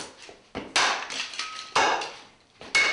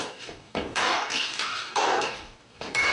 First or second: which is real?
first